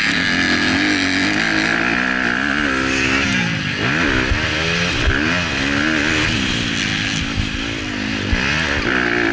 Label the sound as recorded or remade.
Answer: recorded